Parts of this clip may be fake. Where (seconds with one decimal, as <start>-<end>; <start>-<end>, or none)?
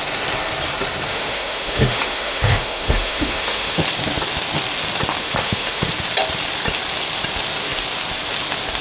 1.1-3.8; 5.2-5.9